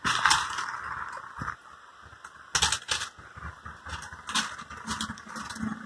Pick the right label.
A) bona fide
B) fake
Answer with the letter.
A